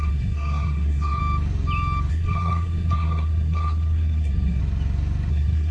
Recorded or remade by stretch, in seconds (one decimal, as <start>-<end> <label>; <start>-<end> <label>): 0.0-1.2 remade; 1.2-2.1 recorded; 2.1-4.6 remade; 4.6-5.3 recorded; 5.3-5.7 remade